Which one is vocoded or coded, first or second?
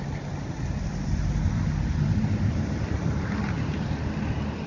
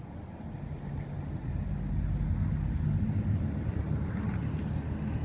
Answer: first